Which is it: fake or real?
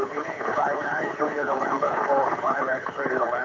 fake